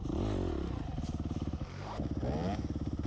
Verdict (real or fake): real